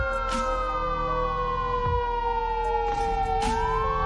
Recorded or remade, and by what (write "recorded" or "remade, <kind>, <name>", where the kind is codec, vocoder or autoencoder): recorded